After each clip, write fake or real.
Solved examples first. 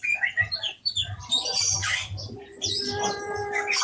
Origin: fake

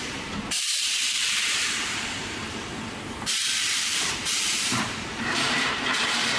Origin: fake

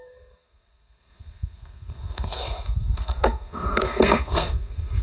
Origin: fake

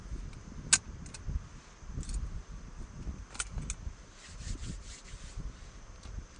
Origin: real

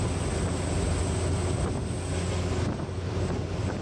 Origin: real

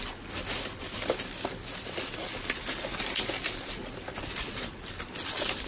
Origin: real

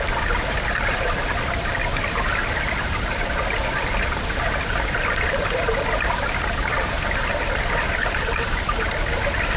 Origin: real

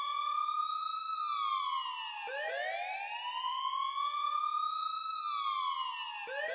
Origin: real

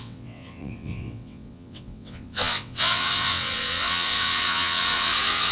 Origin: fake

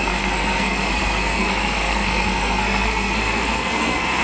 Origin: fake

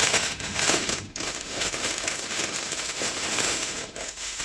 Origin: fake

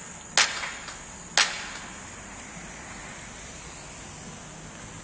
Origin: real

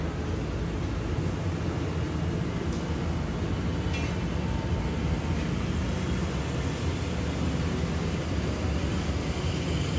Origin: real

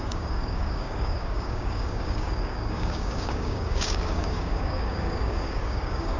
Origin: fake